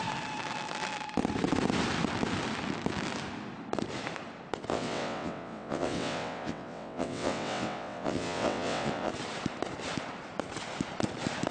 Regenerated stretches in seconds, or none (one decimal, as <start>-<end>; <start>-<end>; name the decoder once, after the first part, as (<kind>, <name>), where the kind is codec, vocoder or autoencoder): 4.7-9.1 (vocoder, WaveNeXt)